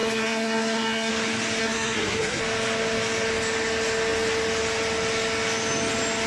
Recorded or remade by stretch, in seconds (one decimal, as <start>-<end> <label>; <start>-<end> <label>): 0.0-1.1 remade; 1.1-1.6 recorded; 1.6-2.4 remade; 2.4-6.3 recorded